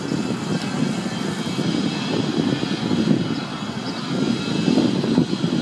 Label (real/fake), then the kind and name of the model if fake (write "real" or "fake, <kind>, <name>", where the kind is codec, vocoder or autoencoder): real